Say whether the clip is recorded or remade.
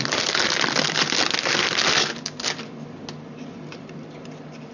recorded